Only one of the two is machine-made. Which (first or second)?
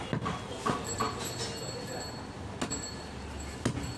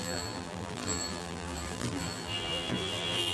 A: second